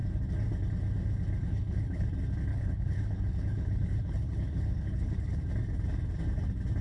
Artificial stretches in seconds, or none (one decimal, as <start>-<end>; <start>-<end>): 1.4-2.1; 2.5-5.4